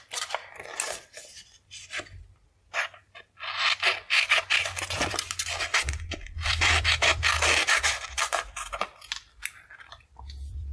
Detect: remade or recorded remade